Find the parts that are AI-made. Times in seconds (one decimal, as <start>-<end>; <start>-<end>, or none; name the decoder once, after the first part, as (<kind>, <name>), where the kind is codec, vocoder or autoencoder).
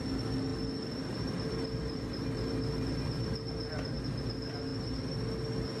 0.5-4.0 (vocoder, BigVGAN v2); 4.7-5.2